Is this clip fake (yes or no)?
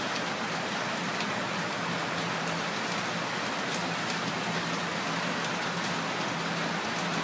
no